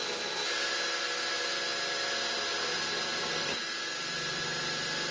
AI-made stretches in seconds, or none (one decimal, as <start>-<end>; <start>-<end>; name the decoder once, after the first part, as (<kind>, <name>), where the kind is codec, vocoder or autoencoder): 3.1-5.1 (vocoder, BigVGAN v2)